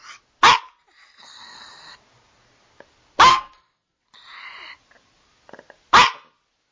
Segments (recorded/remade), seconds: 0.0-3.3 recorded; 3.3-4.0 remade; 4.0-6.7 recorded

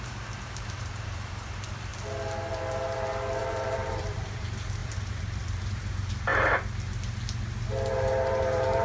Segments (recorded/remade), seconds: 0.0-1.9 remade; 1.9-3.4 recorded; 3.4-6.3 remade; 6.3-7.9 recorded; 7.9-8.8 remade

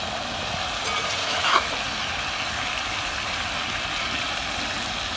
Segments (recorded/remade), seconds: 0.0-1.2 recorded; 1.2-1.7 remade; 1.7-5.2 recorded

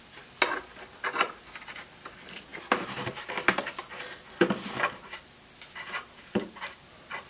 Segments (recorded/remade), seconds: 0.0-7.3 recorded

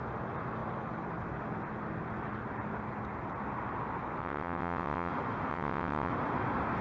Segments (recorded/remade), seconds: 0.0-4.2 recorded; 4.2-5.1 remade; 5.1-5.5 recorded; 5.5-6.1 remade; 6.1-6.8 recorded